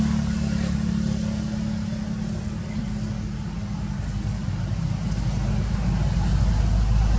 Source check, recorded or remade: recorded